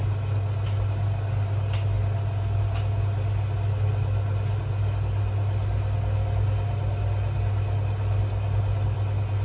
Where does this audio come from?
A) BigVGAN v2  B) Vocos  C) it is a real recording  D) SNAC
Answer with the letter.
C